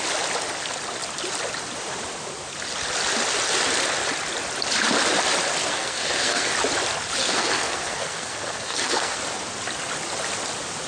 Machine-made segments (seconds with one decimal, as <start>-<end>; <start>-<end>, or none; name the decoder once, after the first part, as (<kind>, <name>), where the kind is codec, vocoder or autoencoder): 5.6-6.5 (codec, SNAC); 7.2-9.2